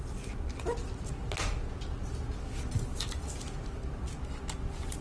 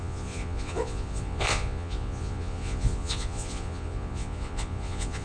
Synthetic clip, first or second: second